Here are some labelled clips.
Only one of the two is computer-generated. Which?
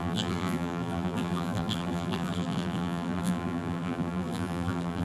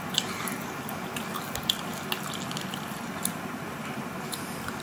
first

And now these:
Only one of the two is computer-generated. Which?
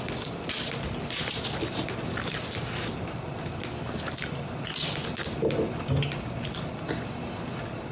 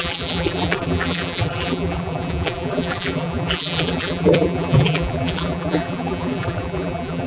second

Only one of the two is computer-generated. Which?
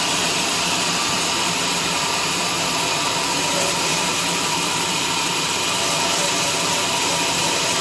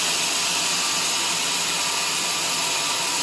first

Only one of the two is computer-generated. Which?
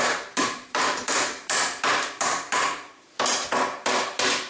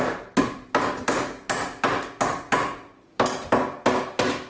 first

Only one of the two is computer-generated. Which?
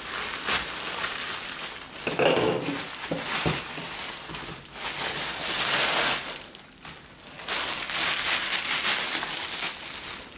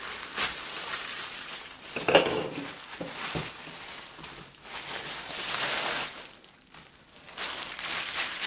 second